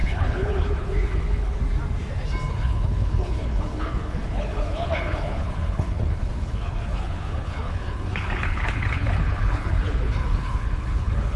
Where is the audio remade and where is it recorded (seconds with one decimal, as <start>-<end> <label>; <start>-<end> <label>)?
0.0-1.6 remade; 1.6-2.5 recorded; 2.5-11.4 remade